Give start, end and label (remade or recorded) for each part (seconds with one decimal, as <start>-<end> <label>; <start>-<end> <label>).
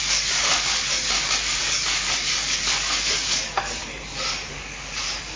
0.0-3.8 remade; 3.8-4.5 recorded; 4.5-5.4 remade